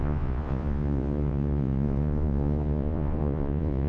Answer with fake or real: fake